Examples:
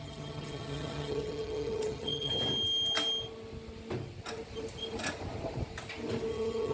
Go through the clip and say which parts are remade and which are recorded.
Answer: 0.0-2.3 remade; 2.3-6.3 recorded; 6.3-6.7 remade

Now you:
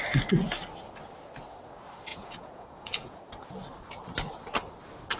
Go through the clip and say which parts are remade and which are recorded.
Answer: 0.0-2.1 recorded; 2.1-3.2 remade; 3.2-5.2 recorded

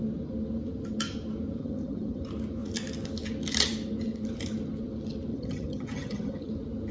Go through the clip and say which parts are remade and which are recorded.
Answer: 0.0-1.6 recorded; 1.6-2.2 remade; 2.2-5.3 recorded; 5.3-6.5 remade; 6.5-6.9 recorded

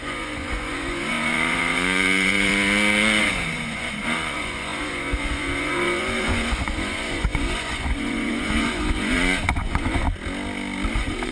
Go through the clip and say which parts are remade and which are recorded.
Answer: 0.0-2.5 remade; 2.5-3.2 recorded; 3.2-10.0 remade; 10.0-10.9 recorded; 10.9-11.3 remade